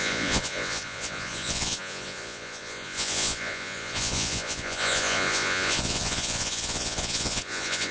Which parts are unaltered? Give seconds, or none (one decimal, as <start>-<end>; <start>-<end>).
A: none